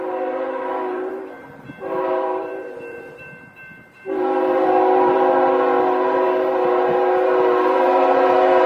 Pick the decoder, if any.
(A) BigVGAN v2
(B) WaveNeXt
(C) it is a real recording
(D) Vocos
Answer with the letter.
A